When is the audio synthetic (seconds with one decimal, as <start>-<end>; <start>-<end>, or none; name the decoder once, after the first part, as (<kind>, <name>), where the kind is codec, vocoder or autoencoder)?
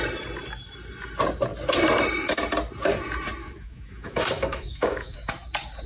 3.4-5.3 (autoencoder, DAC-VAE)